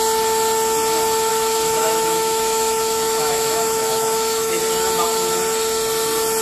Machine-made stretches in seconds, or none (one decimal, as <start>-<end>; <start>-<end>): 1.3-4.6